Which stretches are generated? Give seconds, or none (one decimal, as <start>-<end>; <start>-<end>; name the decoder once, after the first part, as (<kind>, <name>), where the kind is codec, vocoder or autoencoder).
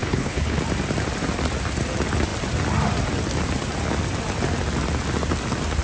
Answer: 0.0-0.6 (codec, HILCodec)